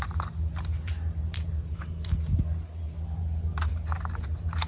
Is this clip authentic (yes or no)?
yes